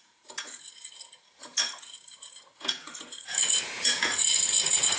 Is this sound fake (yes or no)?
yes